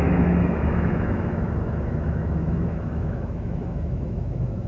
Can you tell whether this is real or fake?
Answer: fake